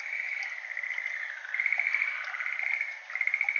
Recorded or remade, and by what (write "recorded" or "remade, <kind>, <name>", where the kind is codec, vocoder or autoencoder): recorded